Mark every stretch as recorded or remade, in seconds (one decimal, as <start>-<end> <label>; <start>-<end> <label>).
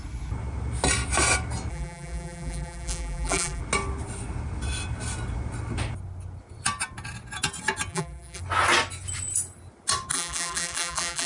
0.0-1.7 recorded; 1.7-3.6 remade; 3.6-7.9 recorded; 7.9-8.4 remade; 8.4-10.1 recorded; 10.1-11.3 remade